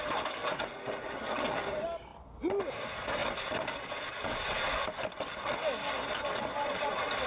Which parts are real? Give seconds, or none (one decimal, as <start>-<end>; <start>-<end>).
0.4-1.7; 2.1-2.7; 3.2-6.7